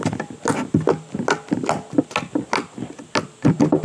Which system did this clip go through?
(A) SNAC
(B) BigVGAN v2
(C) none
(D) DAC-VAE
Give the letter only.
C